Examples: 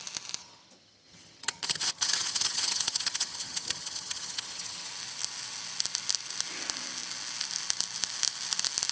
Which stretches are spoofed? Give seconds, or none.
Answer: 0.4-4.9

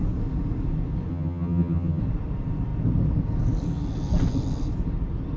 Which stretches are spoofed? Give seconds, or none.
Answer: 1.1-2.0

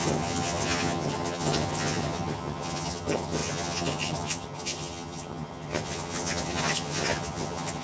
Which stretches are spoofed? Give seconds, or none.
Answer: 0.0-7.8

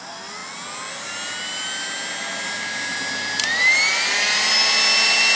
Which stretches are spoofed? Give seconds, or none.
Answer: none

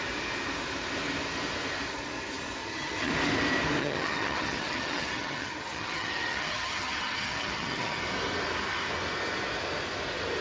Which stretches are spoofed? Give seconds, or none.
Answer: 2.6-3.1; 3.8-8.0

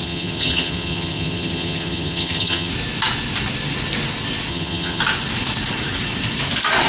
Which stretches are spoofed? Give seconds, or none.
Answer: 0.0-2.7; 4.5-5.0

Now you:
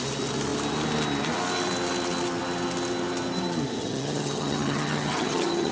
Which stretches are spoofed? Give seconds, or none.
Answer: 3.8-5.7

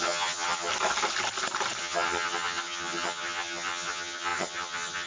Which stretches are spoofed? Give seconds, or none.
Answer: 0.0-0.7; 1.8-5.1